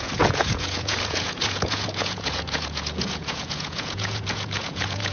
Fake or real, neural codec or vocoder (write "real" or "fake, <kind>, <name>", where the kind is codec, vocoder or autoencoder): fake, vocoder, Vocos